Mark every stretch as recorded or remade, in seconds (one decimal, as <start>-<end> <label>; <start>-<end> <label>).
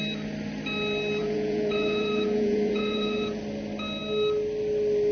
0.0-1.2 recorded; 1.2-3.4 remade; 3.4-5.1 recorded